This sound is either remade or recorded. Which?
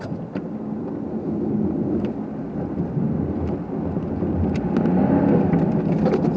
recorded